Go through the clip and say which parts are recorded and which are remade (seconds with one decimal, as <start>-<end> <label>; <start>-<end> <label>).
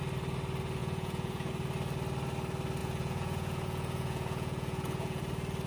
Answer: 0.0-0.8 recorded; 0.8-1.5 remade; 1.5-2.8 recorded; 2.8-5.2 remade; 5.2-5.7 recorded